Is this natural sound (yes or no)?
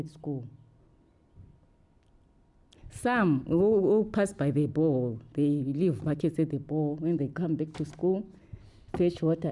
yes